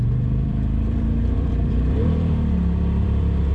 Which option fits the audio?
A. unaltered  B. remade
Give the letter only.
B